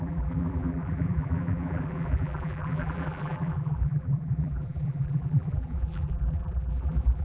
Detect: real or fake fake